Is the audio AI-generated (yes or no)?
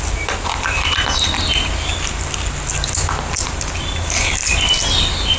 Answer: no